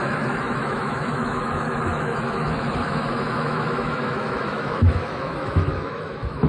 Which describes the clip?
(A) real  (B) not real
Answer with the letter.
B